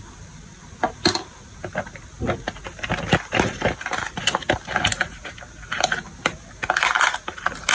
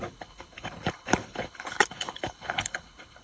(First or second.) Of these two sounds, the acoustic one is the first